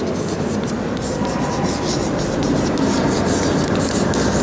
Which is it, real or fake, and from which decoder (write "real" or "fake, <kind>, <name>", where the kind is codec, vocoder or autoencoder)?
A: real